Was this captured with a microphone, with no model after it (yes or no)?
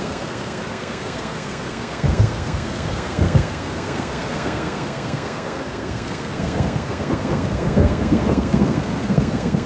no